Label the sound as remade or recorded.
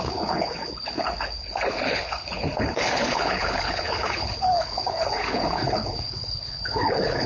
remade